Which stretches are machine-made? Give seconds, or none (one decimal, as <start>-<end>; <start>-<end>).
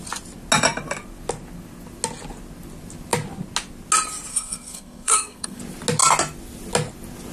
4.3-5.6